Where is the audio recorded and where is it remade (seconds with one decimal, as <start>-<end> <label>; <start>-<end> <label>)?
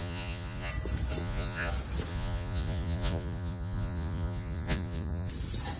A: 0.0-0.7 remade; 0.7-1.2 recorded; 1.2-1.7 remade; 1.7-2.1 recorded; 2.1-5.3 remade; 5.3-5.8 recorded